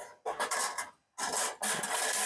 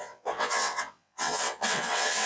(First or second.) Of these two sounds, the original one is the first